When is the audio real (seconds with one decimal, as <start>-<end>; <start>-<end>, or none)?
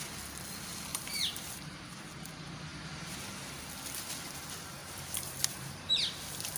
0.0-0.9; 1.8-4.8; 5.9-6.6